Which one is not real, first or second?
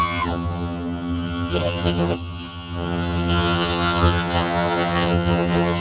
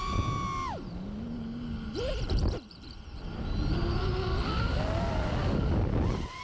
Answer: first